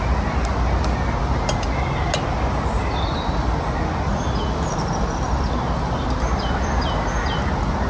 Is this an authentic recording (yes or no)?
yes